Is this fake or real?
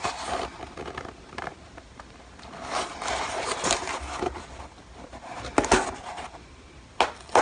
real